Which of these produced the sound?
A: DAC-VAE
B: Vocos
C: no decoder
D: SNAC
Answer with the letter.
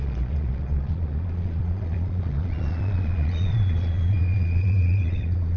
B